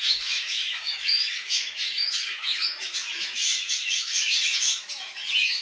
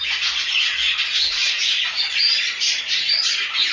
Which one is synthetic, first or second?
first